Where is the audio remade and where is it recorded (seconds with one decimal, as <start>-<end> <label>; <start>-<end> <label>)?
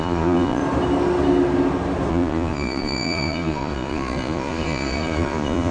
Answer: 0.0-0.6 remade; 0.6-2.1 recorded; 2.1-5.7 remade